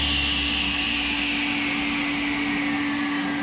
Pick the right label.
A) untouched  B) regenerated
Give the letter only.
A